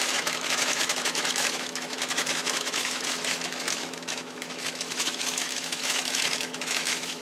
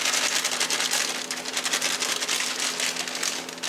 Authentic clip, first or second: second